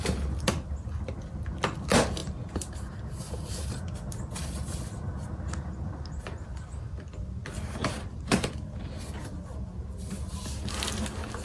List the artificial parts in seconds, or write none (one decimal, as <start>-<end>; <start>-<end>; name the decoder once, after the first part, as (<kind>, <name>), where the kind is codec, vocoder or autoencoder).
none

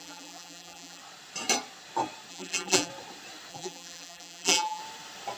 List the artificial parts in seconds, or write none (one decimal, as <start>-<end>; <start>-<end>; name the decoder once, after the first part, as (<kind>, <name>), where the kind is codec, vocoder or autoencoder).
0.0-1.0 (vocoder, BigVGAN v2); 2.3-2.9; 3.5-4.8